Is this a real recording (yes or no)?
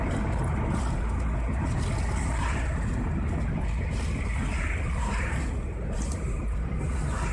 yes